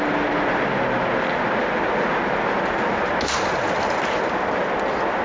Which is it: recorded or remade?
recorded